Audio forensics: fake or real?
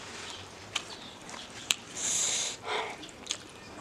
fake